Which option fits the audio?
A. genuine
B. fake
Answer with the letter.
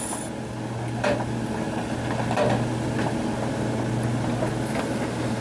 A